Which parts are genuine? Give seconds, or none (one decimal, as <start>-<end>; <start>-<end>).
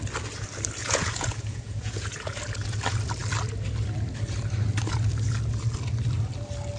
0.0-0.8; 2.4-6.8